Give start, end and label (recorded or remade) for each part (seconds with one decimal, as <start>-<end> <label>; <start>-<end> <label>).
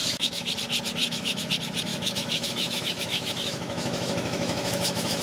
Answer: 0.0-0.5 remade; 0.5-1.0 recorded; 1.0-1.5 remade; 1.5-1.9 recorded; 1.9-5.2 remade